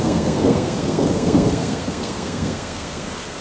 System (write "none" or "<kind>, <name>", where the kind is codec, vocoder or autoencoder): codec, SNAC